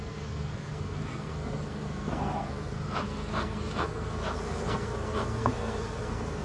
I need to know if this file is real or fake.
fake